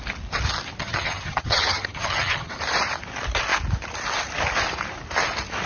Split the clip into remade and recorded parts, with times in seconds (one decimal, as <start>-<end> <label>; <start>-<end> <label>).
0.0-0.8 recorded; 0.8-2.5 remade; 2.5-5.7 recorded